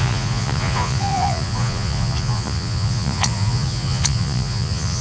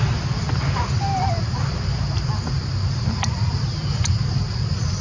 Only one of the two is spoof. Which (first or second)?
first